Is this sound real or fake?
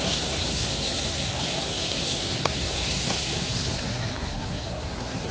fake